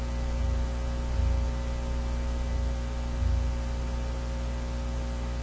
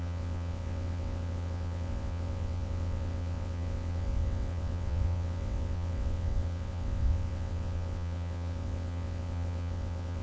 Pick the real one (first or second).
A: first